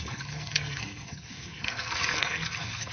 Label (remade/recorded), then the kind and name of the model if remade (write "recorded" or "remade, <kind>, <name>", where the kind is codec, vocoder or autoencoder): remade, codec, SNAC